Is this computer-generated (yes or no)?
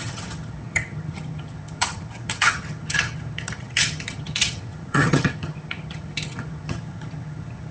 yes